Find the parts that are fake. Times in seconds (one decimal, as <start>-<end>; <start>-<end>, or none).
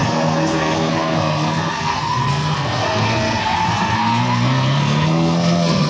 0.0-5.9